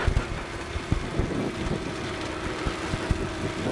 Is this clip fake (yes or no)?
no